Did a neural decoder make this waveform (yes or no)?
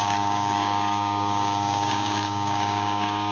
yes